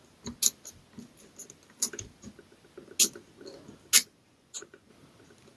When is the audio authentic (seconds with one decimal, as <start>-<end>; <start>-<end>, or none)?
0.0-4.0; 4.9-5.6